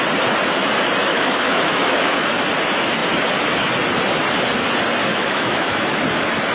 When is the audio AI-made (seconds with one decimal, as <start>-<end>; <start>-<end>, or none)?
1.1-2.3; 5.1-6.0